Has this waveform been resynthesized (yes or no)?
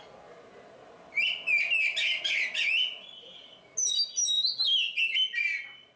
no